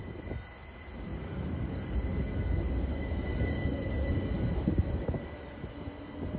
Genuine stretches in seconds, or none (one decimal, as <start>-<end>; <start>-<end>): 0.0-1.1; 1.9-2.9; 4.2-6.4